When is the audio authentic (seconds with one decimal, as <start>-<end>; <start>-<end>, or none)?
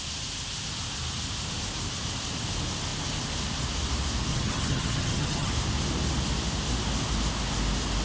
0.0-4.3; 5.5-8.0